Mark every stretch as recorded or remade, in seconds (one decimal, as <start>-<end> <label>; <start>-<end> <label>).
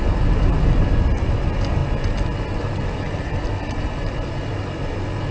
0.0-5.3 recorded